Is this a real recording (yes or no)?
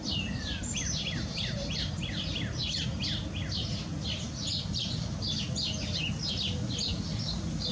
yes